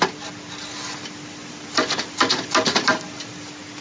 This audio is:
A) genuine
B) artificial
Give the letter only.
A